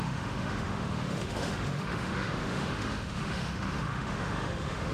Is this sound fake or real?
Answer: fake